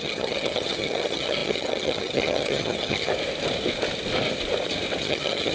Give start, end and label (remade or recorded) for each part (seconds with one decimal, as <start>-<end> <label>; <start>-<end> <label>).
0.0-3.1 remade; 3.1-5.0 recorded; 5.0-5.5 remade